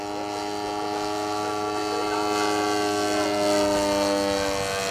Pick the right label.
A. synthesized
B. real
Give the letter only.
B